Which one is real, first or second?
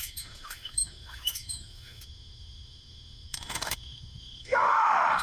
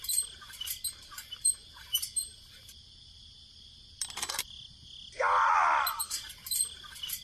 second